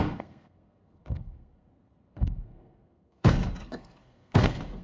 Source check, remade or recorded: remade